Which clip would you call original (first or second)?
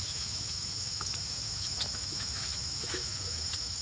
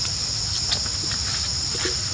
second